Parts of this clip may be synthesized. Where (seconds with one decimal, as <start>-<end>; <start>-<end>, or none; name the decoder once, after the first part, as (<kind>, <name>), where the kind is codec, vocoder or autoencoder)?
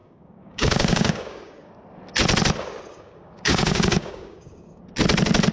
0.0-1.7 (codec, DAC); 2.9-4.8